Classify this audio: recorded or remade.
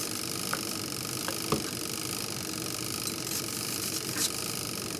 recorded